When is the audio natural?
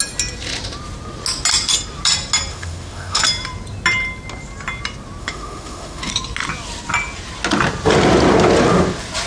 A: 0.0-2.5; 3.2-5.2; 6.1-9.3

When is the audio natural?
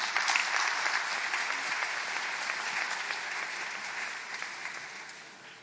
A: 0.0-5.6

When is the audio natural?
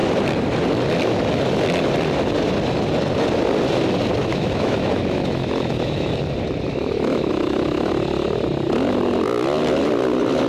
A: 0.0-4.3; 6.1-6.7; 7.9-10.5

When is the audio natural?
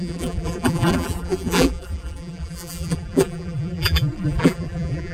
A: none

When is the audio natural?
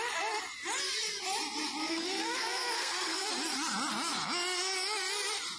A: 0.0-1.8; 3.3-5.6